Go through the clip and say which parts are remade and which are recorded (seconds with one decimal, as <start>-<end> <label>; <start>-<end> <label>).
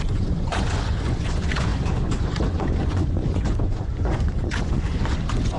0.0-5.6 remade